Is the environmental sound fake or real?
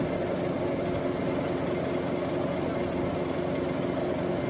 real